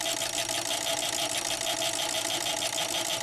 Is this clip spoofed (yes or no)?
no